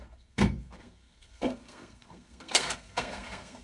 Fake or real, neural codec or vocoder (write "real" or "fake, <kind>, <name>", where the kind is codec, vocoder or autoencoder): fake, codec, SNAC